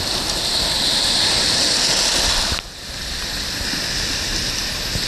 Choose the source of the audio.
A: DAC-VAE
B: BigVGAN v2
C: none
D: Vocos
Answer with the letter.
C